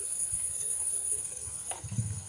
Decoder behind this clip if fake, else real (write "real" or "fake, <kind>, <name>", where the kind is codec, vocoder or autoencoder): fake, codec, SNAC